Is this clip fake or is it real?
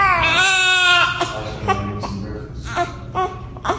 real